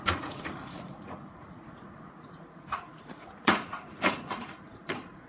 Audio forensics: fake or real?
fake